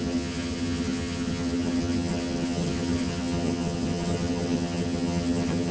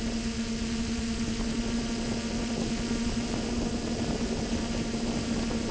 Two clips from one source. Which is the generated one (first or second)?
first